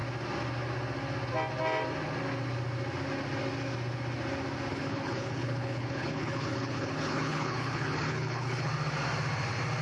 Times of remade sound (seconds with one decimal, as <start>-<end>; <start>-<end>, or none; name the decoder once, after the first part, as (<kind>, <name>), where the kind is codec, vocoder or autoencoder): 4.7-8.7 (codec, HILCodec)